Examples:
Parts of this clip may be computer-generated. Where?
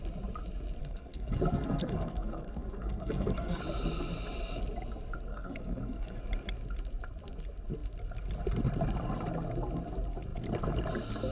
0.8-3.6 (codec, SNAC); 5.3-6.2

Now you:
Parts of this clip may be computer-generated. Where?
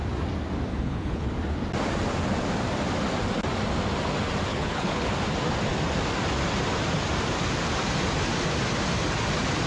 0.7-1.3 (codec, HILCodec); 4.5-5.1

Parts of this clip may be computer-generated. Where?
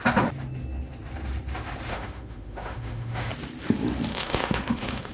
1.9-3.3 (autoencoder, DAC-VAE); 4.1-5.1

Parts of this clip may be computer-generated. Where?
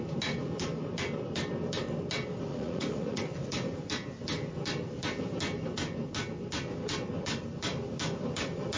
2.5-3.2 (vocoder, Vocos)